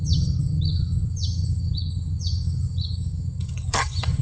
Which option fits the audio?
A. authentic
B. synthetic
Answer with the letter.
B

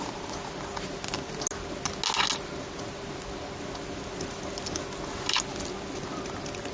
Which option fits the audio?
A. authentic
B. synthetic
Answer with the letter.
A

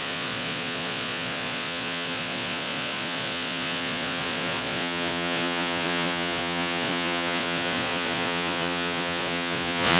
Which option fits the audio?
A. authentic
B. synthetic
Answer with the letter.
B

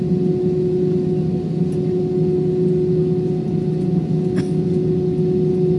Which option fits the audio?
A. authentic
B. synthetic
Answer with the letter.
A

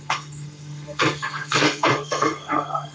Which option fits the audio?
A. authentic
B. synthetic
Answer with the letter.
B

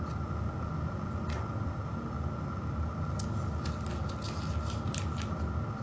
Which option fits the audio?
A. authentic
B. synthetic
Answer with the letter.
A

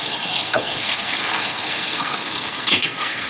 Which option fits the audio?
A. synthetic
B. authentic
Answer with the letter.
A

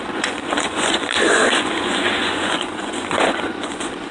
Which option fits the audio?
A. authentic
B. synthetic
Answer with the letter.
B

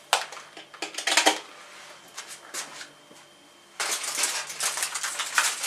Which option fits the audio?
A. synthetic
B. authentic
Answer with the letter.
B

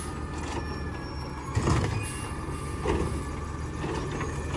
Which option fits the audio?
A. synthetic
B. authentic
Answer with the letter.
B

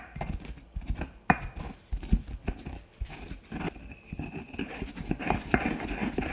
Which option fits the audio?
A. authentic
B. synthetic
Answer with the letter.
A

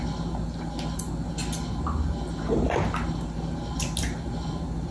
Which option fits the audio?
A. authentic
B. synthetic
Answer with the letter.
A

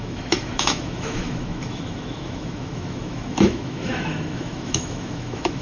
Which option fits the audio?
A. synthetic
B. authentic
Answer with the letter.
A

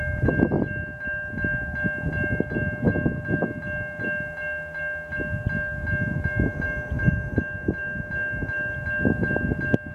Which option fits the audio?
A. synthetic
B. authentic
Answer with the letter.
B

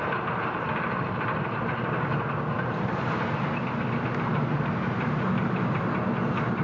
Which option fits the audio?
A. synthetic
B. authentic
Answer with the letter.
B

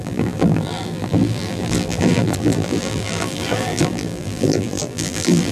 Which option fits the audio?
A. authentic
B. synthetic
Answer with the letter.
B